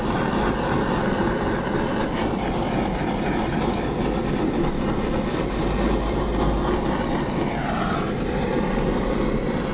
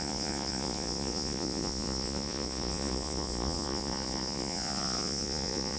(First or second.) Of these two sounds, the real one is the first